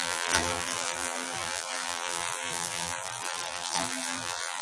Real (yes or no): no